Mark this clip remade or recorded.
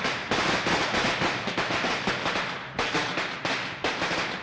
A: recorded